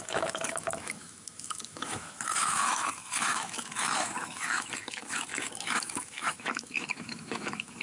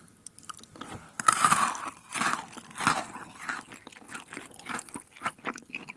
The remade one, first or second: first